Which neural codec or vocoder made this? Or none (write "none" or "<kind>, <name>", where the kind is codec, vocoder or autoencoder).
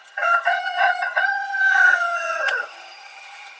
vocoder, HiFi-GAN